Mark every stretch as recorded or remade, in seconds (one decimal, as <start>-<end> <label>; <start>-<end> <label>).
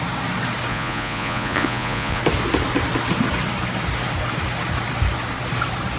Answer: 0.0-0.7 recorded; 0.7-2.2 remade; 2.2-6.0 recorded